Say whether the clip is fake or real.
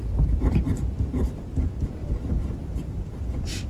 fake